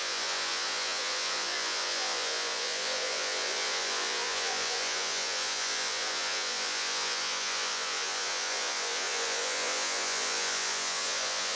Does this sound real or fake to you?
fake